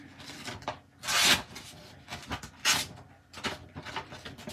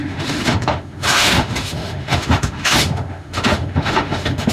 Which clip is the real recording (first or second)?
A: first